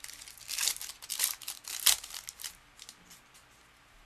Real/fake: real